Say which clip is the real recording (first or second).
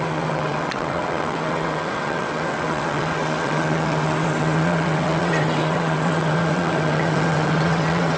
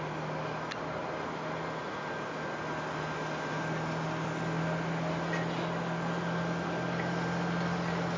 second